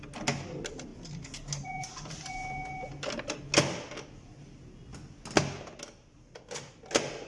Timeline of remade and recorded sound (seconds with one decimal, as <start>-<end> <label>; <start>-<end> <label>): 0.0-7.3 recorded